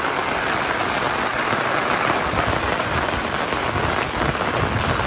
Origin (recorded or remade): recorded